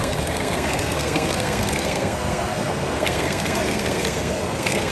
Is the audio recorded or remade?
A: remade